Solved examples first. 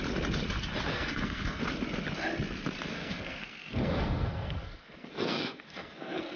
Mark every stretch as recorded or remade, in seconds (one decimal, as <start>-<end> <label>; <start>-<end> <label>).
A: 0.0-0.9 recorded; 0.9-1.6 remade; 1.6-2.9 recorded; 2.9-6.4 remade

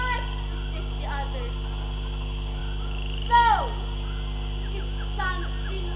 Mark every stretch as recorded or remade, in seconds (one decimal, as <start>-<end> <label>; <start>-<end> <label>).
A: 0.0-6.0 recorded

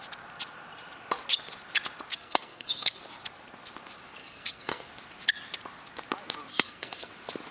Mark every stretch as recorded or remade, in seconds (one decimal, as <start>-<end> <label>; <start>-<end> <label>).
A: 0.0-2.1 recorded; 2.1-3.0 remade; 3.0-4.2 recorded; 4.2-4.9 remade; 4.9-6.5 recorded; 6.5-7.1 remade; 7.1-7.5 recorded

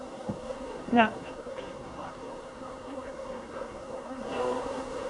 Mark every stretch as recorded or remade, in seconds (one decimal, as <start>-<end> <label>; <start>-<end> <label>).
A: 0.0-5.1 remade

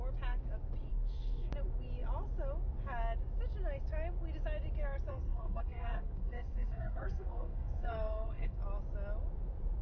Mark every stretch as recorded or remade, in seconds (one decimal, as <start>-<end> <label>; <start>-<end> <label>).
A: 0.0-0.9 recorded; 0.9-1.5 remade; 1.5-5.1 recorded; 5.1-8.6 remade; 8.6-9.8 recorded